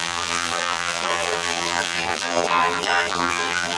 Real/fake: fake